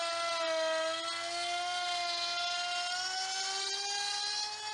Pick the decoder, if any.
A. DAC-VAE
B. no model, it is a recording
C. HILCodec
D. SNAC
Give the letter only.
B